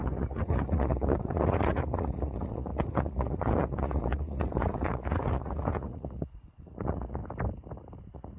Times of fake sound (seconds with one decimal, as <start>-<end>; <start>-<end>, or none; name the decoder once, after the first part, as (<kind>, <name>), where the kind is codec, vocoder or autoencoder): 0.0-7.2 (vocoder, Vocos); 8.0-8.4